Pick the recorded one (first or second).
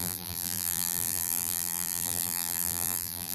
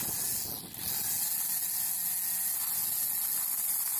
second